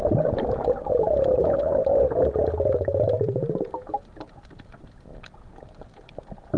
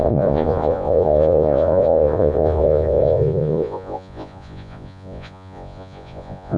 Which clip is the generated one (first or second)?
second